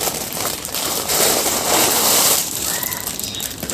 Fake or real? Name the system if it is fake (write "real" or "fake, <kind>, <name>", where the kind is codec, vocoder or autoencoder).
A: fake, vocoder, BigVGAN v2